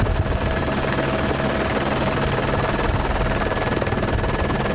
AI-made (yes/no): no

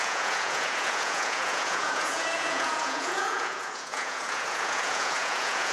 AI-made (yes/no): yes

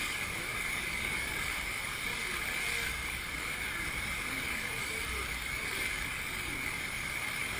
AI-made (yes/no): yes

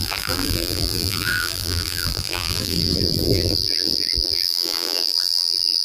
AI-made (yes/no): yes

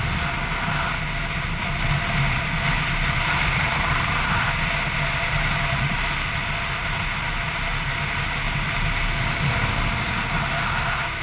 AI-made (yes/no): no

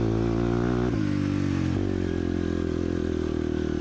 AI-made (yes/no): no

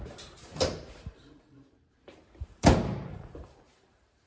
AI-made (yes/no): yes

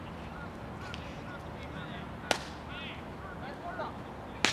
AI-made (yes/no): no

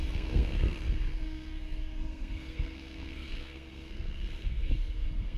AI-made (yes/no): yes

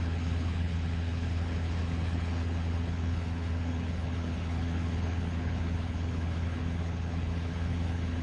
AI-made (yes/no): yes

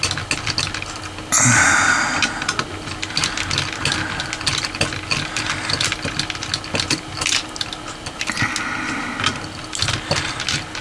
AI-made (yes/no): no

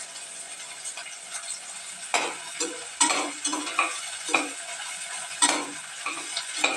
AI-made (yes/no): yes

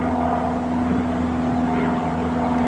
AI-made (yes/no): no